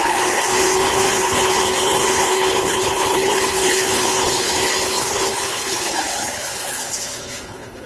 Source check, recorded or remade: remade